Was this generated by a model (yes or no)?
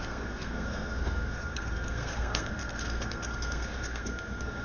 yes